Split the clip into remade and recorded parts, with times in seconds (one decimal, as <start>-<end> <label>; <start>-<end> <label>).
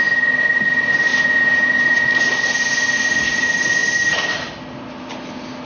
0.0-1.1 recorded; 1.1-2.1 remade; 2.1-5.7 recorded